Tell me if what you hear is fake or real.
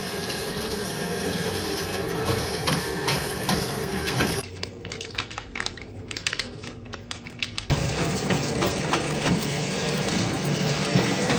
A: fake